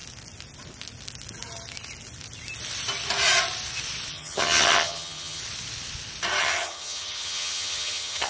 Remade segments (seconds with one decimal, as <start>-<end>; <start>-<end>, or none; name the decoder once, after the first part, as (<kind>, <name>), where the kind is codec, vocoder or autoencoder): 4.1-5.4 (vocoder, HiFi-GAN); 6.4-8.3